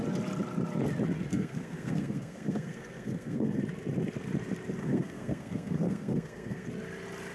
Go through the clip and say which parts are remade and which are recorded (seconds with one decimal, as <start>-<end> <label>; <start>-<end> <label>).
0.0-1.3 recorded; 1.3-3.6 remade; 3.6-4.8 recorded; 4.8-6.7 remade; 6.7-7.3 recorded